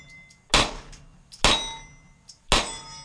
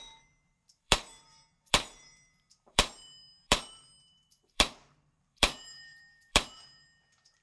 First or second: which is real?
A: first